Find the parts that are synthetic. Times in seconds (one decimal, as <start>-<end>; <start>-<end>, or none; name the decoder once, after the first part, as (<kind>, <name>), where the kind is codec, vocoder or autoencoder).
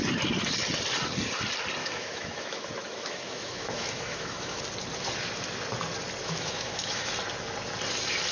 1.8-4.6 (autoencoder, DAC-VAE); 6.2-7.1